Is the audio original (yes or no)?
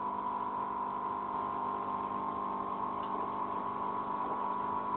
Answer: yes